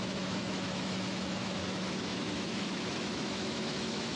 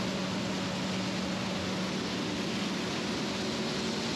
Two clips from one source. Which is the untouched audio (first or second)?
second